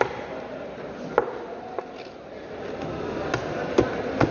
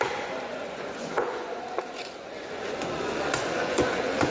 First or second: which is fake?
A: second